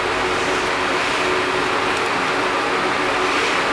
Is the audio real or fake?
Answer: real